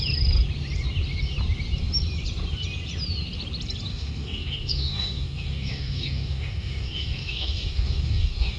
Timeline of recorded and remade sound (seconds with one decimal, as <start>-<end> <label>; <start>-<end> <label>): 0.0-3.9 recorded; 3.9-8.6 remade